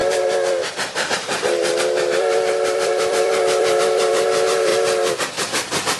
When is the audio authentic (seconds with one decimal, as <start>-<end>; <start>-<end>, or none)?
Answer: none